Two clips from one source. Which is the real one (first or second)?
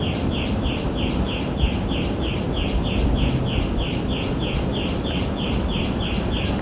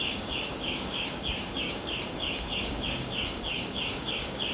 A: first